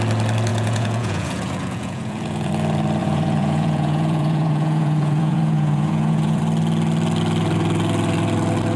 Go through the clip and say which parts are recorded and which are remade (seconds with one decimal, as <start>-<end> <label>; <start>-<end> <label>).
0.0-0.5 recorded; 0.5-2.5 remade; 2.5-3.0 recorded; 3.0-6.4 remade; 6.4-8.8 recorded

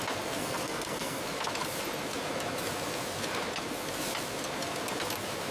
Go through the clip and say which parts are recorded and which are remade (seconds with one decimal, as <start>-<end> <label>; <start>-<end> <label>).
0.0-0.4 recorded; 0.4-1.2 remade; 1.2-5.5 recorded

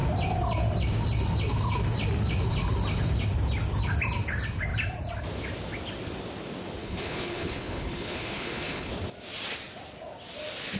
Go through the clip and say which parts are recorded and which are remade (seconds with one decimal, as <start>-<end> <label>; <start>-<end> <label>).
0.0-6.8 recorded; 6.8-8.9 remade; 8.9-10.8 recorded

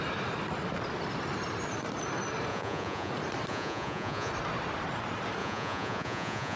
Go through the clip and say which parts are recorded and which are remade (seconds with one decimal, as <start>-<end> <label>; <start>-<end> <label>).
0.0-2.5 recorded; 2.5-3.1 remade; 3.1-3.5 recorded; 3.5-4.3 remade; 4.3-5.4 recorded; 5.4-6.6 remade

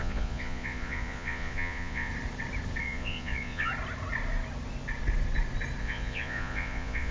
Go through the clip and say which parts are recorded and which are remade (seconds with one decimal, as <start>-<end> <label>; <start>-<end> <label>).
0.0-2.1 remade; 2.1-2.8 recorded; 2.8-3.7 remade; 3.7-5.8 recorded; 5.8-7.1 remade

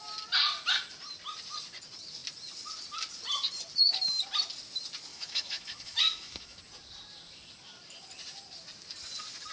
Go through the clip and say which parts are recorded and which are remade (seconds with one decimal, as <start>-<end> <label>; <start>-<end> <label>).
0.0-5.1 recorded; 5.1-6.6 remade; 6.6-9.5 recorded

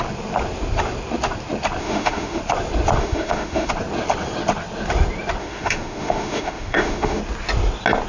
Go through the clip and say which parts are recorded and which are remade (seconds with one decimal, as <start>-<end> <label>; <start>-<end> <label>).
0.0-1.8 recorded; 1.8-2.4 remade; 2.4-3.0 recorded; 3.0-3.7 remade; 3.7-5.4 recorded; 5.4-7.2 remade; 7.2-8.1 recorded

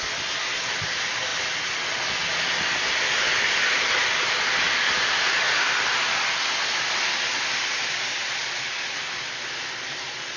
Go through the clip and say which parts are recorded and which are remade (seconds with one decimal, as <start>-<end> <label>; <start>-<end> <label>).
0.0-10.4 recorded